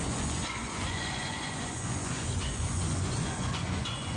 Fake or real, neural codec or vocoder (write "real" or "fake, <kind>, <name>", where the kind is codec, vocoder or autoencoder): fake, vocoder, Vocos